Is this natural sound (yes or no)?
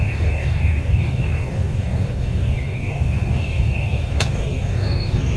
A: no